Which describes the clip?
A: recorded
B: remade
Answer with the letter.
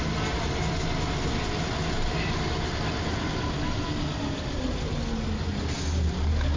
A